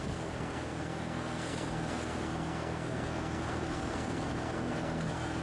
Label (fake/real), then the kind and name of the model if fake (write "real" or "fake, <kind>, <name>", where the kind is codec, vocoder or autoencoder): fake, codec, SNAC